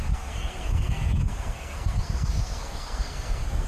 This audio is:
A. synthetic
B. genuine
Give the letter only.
A